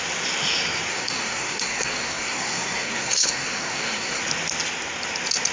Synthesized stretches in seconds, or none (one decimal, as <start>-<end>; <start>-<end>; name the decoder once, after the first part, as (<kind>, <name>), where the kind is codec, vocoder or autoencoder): 0.9-4.2 (codec, SNAC)

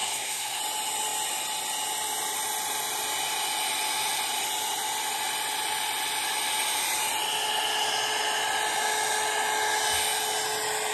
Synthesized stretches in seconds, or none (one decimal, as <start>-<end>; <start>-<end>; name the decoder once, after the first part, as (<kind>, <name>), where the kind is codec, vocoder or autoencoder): 0.0-0.6 (codec, SNAC)

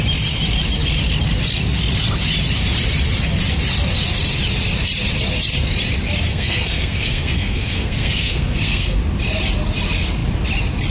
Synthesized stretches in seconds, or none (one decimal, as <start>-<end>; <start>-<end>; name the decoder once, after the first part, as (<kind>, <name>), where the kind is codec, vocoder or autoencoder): 6.3-9.0 (codec, SNAC)

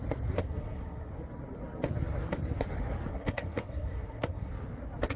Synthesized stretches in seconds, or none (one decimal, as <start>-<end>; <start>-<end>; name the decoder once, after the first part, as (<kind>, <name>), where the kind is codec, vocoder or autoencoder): 0.4-1.1 (codec, SNAC); 3.1-4.5

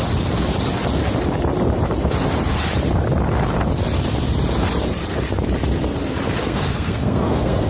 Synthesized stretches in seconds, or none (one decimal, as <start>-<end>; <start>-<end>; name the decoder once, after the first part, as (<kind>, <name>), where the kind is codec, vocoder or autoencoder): 6.4-7.7 (codec, SNAC)